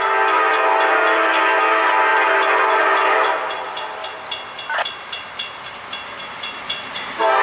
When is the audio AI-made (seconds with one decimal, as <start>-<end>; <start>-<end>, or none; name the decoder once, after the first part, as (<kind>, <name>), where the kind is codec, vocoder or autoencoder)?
none